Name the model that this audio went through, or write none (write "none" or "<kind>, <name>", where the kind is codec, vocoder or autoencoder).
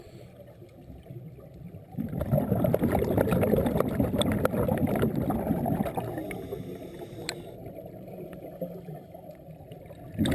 none